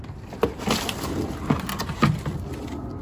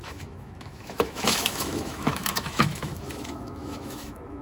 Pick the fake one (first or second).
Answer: second